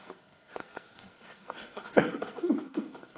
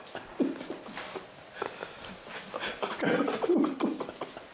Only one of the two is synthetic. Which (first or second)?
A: first